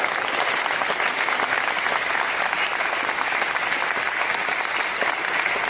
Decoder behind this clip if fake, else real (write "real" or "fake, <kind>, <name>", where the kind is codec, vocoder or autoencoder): real